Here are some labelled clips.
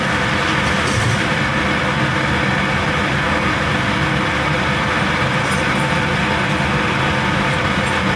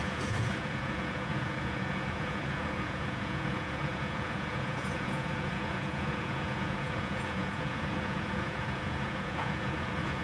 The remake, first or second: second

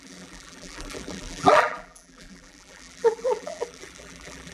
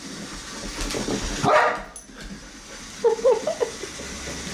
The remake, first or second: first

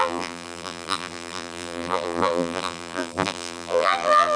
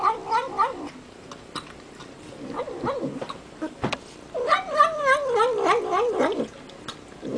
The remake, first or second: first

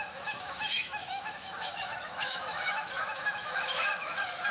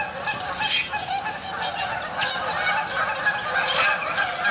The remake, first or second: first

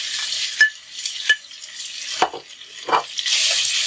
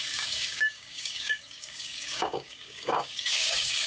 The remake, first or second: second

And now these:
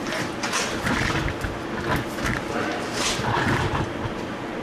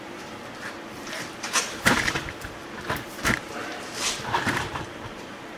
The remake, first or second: second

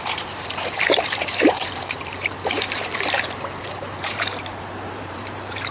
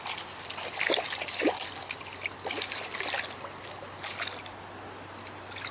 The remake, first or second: first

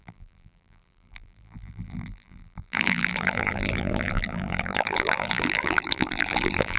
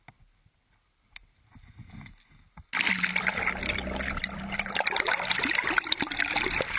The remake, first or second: first